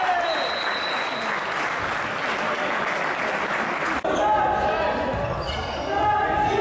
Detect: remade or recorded recorded